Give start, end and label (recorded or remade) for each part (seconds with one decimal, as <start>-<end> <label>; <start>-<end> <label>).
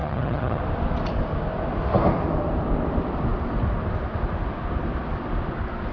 0.0-0.6 remade; 0.6-5.9 recorded